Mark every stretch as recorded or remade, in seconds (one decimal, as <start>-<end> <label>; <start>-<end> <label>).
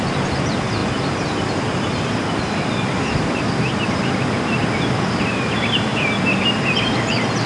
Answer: 0.0-0.8 remade; 0.8-5.3 recorded; 5.3-5.9 remade; 5.9-6.8 recorded; 6.8-7.5 remade